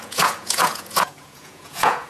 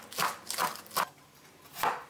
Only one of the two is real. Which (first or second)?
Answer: second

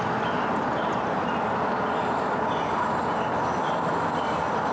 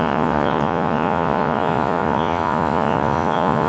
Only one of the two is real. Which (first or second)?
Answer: first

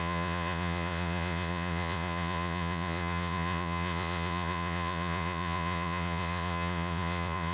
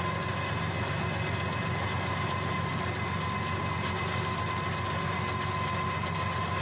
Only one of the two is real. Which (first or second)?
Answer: second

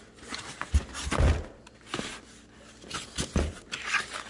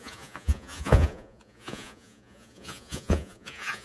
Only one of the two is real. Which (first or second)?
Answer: first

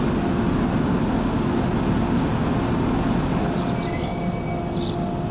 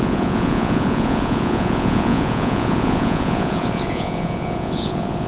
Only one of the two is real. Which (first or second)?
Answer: first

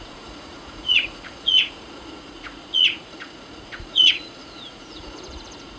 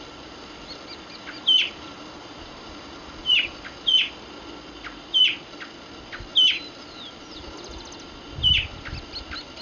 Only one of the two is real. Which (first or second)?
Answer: second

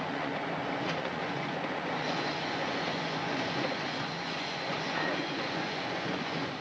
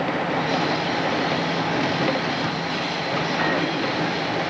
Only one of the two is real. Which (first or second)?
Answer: second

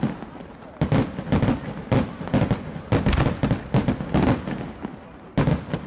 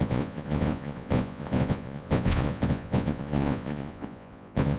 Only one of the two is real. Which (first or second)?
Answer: first